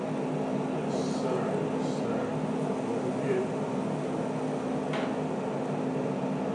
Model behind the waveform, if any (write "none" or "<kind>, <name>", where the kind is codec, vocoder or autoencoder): none